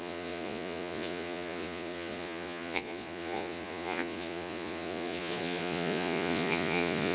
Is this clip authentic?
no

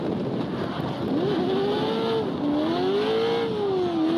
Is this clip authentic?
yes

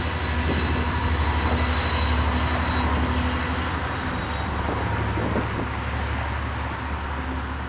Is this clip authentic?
yes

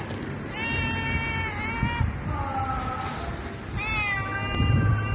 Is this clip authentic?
yes